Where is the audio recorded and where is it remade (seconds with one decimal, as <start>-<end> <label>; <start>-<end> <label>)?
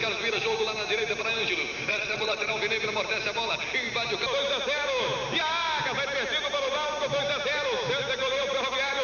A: 0.0-1.9 recorded; 1.9-2.5 remade; 2.5-9.0 recorded